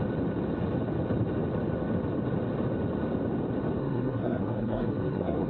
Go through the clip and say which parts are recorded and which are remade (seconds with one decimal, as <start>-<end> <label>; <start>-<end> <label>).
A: 0.0-3.8 recorded; 3.8-5.5 remade